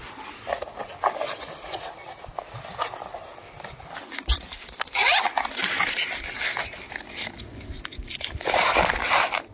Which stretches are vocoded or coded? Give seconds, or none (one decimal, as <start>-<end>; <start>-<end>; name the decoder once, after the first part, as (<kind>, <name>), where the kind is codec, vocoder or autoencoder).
none